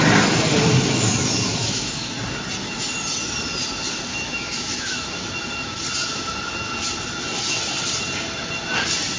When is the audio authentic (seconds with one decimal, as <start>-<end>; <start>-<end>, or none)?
0.0-1.5; 2.1-4.1; 5.8-9.2